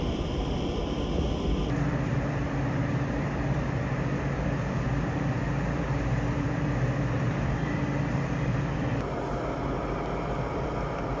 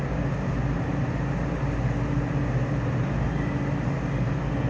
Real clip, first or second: second